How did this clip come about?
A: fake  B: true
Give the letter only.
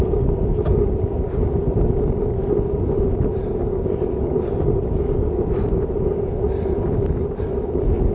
B